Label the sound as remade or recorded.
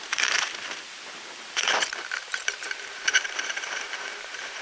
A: remade